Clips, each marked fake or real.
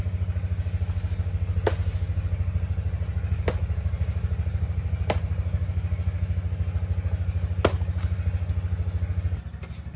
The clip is real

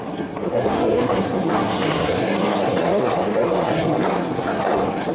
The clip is fake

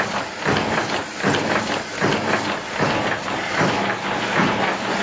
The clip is real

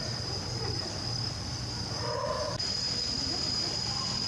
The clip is real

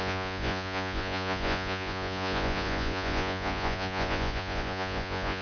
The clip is fake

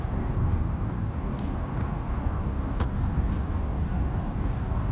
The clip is fake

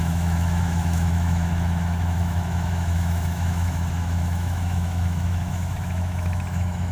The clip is fake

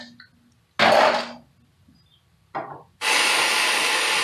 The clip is real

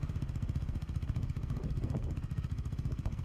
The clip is fake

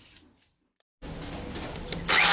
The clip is real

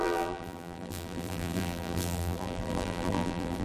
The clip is fake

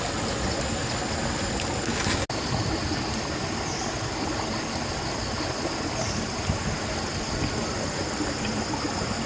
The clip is real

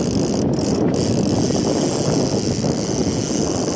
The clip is real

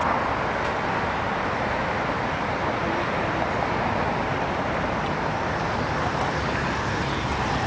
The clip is fake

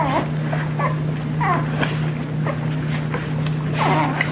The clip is real